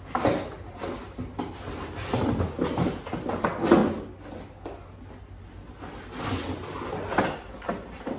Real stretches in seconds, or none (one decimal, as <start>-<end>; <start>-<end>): 0.0-8.2